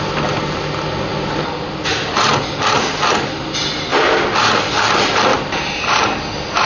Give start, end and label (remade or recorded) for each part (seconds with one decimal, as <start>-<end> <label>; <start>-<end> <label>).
0.0-6.7 recorded